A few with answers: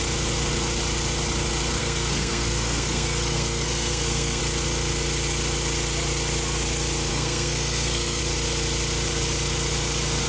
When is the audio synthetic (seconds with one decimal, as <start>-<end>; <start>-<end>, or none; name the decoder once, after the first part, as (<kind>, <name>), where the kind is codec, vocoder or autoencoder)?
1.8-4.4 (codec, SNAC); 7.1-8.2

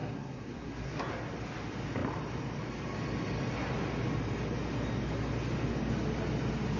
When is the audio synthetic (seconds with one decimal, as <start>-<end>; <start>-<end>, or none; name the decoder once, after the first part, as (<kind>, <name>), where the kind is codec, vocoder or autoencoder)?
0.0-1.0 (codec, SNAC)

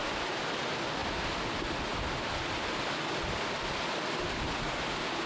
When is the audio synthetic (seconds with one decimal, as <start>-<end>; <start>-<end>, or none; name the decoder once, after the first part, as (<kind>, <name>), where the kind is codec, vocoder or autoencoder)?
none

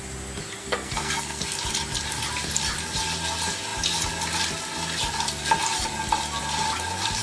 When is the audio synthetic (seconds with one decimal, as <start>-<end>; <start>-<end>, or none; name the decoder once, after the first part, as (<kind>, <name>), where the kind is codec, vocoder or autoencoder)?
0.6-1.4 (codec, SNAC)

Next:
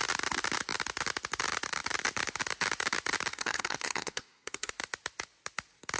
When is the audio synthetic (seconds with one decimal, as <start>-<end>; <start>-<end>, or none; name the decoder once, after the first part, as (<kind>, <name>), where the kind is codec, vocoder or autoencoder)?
3.3-4.7 (codec, SNAC)

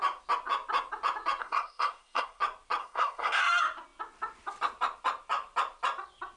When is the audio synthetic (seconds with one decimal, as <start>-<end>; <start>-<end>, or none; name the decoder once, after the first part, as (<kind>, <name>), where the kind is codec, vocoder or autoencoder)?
1.4-2.4 (codec, SNAC); 2.8-3.4

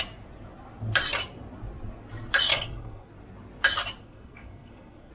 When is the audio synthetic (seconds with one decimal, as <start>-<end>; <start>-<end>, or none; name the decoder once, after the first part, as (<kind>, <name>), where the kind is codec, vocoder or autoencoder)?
2.5-3.1 (codec, SNAC); 4.0-5.1

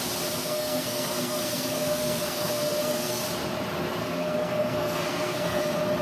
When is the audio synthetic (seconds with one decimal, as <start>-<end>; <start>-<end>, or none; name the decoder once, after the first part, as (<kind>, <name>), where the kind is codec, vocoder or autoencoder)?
0.4-3.2 (codec, SNAC); 4.0-5.6